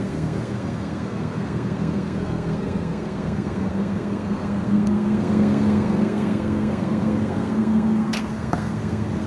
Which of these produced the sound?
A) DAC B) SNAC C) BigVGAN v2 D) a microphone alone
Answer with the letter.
B